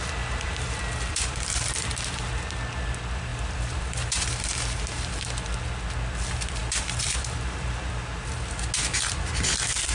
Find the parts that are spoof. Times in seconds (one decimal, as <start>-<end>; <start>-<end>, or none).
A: 0.0-1.9; 3.3-4.3; 6.6-8.3